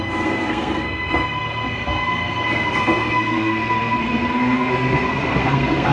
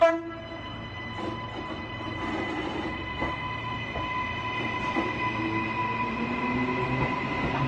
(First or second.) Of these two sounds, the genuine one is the second